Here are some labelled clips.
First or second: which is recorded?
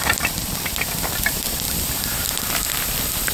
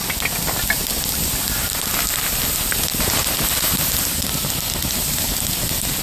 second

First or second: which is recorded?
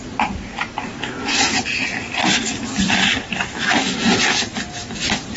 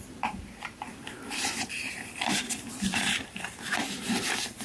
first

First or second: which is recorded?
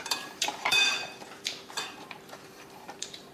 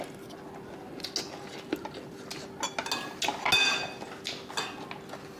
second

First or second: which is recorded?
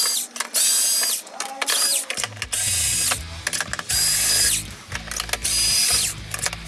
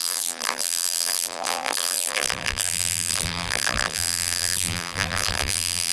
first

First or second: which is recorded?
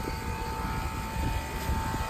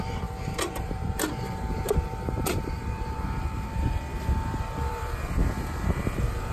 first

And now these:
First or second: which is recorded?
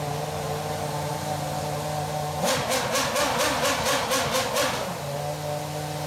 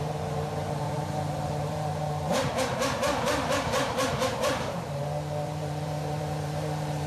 first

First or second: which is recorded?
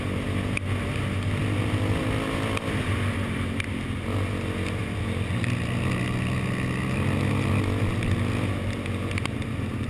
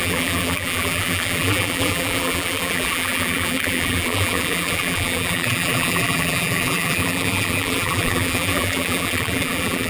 first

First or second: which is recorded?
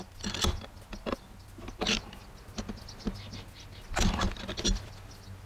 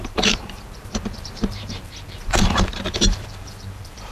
first